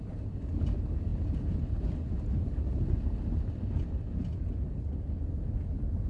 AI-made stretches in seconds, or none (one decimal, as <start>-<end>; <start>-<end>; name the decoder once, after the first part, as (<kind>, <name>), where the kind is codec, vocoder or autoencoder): none